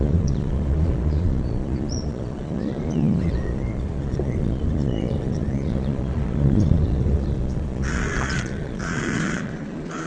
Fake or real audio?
fake